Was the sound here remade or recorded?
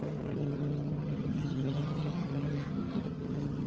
remade